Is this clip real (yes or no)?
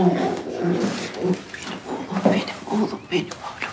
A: yes